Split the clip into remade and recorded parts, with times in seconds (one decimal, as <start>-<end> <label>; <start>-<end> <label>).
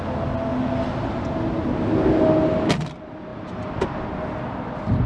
0.0-5.1 recorded